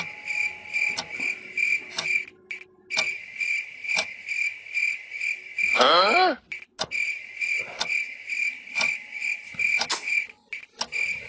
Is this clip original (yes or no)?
yes